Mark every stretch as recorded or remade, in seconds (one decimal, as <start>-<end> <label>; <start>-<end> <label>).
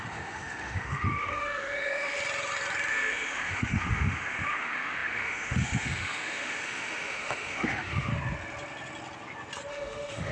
0.0-2.2 remade; 2.2-2.9 recorded; 2.9-8.1 remade; 8.1-9.7 recorded; 9.7-10.3 remade